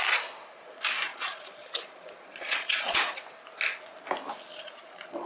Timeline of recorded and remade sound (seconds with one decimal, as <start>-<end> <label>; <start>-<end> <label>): 0.0-1.1 recorded; 1.1-3.2 remade; 3.2-4.5 recorded; 4.5-5.3 remade